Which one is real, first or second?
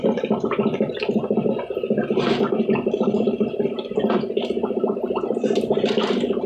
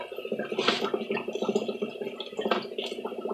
second